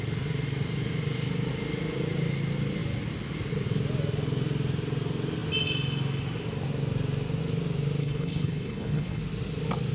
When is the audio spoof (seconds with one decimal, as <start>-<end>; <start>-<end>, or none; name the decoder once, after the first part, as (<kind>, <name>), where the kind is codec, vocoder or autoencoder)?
8.0-9.2 (codec, HILCodec)